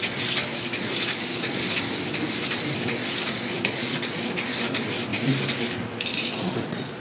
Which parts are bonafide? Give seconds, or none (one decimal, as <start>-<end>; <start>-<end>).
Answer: 0.0-0.5; 1.6-3.0; 4.3-6.1